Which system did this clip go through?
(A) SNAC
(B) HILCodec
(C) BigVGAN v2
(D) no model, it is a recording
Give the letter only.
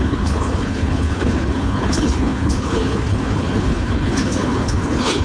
B